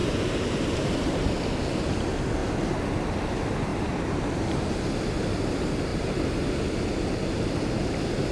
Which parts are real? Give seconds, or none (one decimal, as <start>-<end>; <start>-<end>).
1.3-3.7; 4.7-5.9; 6.5-8.3